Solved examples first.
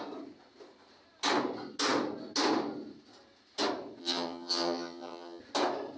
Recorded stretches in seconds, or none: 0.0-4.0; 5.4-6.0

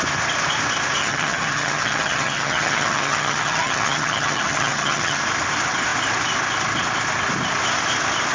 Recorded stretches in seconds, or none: 0.0-1.0; 5.2-8.3

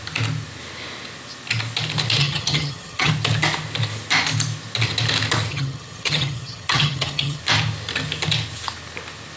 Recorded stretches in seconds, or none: 0.0-2.2; 3.1-5.5; 7.4-9.4

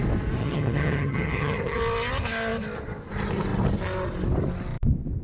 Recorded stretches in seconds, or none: 0.0-0.4; 1.8-5.2

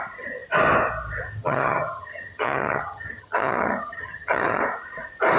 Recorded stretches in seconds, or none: 0.0-1.4; 4.6-5.4

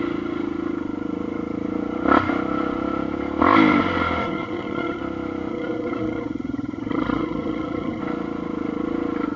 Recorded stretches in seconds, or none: 0.0-4.2; 5.0-5.5; 8.0-9.4

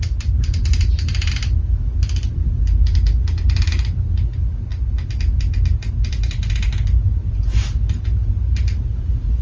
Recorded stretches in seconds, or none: 0.0-9.4